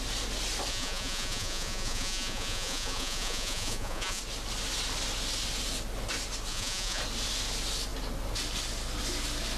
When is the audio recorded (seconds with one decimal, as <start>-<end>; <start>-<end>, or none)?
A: 0.0-0.7; 4.2-6.5; 7.0-9.6